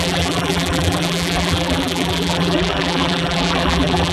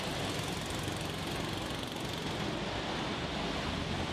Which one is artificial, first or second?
first